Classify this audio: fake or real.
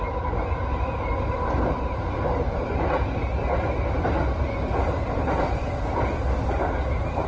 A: real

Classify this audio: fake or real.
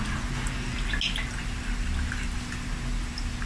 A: real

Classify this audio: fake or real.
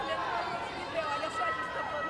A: real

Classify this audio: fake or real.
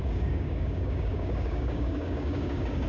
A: fake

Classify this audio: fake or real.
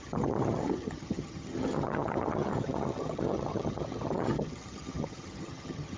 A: fake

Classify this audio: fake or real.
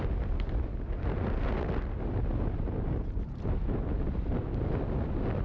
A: real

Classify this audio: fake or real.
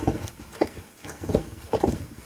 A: fake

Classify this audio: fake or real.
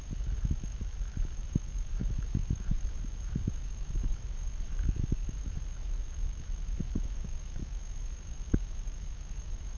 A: fake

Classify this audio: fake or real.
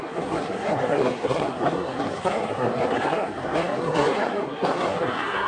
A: fake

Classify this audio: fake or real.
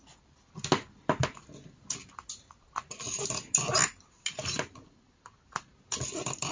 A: real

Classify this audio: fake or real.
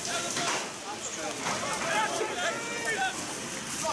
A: real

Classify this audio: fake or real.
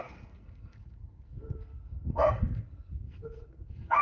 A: fake